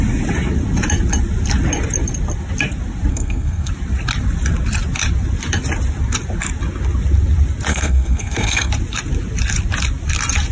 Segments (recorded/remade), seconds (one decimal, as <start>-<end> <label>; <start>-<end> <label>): 0.0-3.1 recorded; 3.1-3.7 remade; 3.7-7.7 recorded; 7.7-8.7 remade; 8.7-10.5 recorded